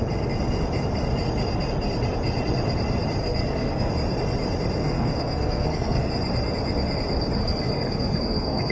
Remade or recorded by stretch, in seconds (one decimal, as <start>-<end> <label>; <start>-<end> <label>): 0.0-3.2 recorded; 3.2-3.9 remade; 3.9-4.8 recorded; 4.8-6.1 remade; 6.1-7.4 recorded; 7.4-8.7 remade